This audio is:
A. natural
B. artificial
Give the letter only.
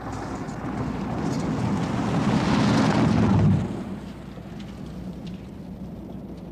A